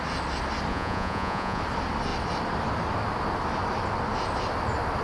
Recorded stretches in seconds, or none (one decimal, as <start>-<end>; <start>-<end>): 0.0-0.7; 1.6-5.0